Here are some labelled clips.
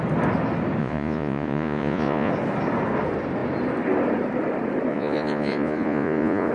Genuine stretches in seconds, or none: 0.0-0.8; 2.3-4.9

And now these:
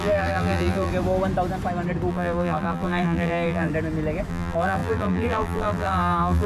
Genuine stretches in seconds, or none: 0.9-2.1; 3.7-4.3

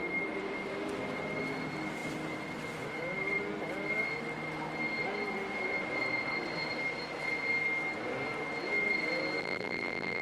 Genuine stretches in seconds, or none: 0.0-9.4

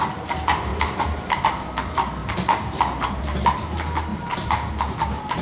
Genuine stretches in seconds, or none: 0.0-0.7; 1.4-2.2; 3.2-4.1; 4.7-5.4

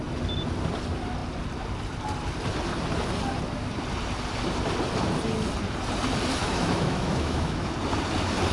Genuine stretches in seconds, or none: 0.0-6.4; 7.7-8.5